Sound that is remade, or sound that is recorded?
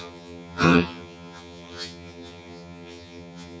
remade